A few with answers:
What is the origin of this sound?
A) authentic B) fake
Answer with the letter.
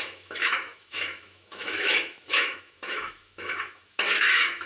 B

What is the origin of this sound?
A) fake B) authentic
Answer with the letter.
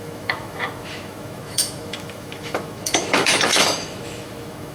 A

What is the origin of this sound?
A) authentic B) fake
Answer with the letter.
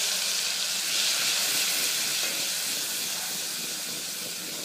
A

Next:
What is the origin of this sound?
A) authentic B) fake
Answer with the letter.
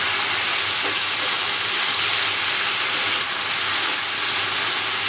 A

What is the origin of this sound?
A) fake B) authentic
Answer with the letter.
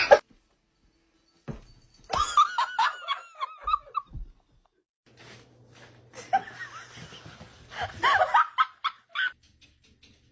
B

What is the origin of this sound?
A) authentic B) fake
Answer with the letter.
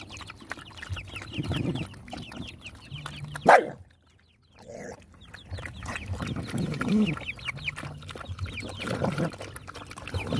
A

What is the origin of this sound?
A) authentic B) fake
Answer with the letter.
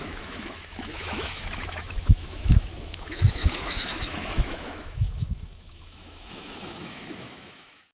B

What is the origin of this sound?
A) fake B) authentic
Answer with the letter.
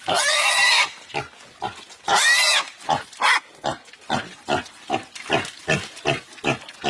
B